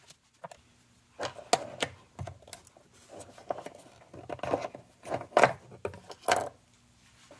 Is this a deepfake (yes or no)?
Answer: no